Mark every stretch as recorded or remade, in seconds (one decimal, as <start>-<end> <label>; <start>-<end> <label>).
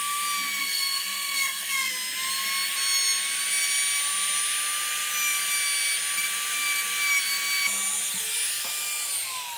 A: 0.0-0.6 recorded; 0.6-1.9 remade; 1.9-9.6 recorded